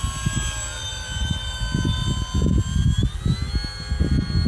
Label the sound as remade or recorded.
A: recorded